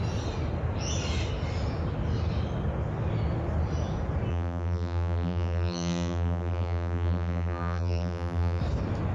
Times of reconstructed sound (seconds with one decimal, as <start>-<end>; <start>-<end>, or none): 4.3-8.6